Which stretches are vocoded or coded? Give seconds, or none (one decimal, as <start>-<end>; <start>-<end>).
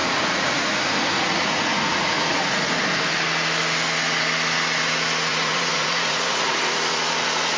0.0-2.7; 5.3-6.6